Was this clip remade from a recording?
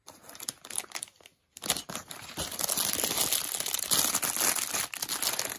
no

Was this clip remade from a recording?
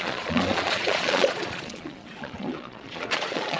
yes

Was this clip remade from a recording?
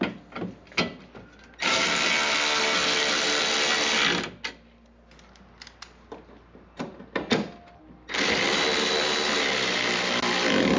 no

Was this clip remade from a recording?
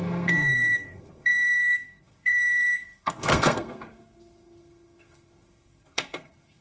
yes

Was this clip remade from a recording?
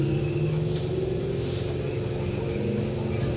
no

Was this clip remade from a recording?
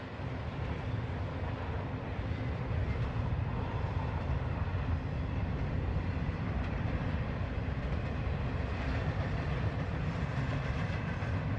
no